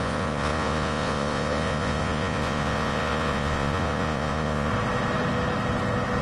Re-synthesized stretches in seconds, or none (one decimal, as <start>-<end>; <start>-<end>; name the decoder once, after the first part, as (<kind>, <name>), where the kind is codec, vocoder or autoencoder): 0.0-4.7 (vocoder, Vocos)